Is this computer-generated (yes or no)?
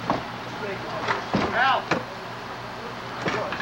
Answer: no